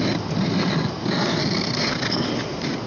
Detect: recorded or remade recorded